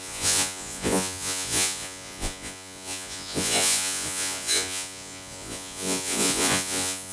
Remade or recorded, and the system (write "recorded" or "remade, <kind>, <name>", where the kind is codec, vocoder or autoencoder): remade, vocoder, Vocos